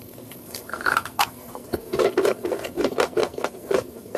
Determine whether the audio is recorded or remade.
remade